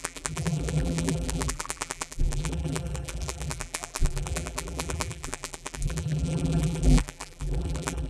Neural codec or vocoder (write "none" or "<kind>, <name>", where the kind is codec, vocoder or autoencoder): vocoder, BigVGAN v2